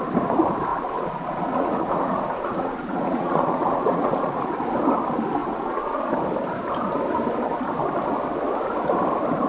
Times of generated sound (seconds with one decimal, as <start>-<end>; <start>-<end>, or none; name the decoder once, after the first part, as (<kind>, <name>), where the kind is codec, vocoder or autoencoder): 0.7-4.4 (vocoder, Vocos); 5.4-6.0